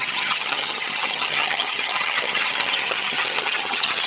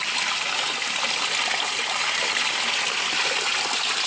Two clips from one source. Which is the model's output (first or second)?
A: first